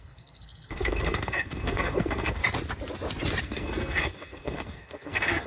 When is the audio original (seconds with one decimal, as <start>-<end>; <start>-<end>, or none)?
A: 2.4-3.4